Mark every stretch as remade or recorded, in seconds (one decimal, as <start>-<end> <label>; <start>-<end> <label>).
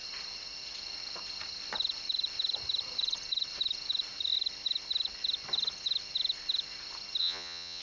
0.0-7.2 recorded; 7.2-7.8 remade